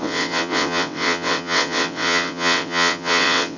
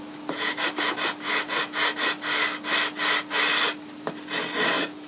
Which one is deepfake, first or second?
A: first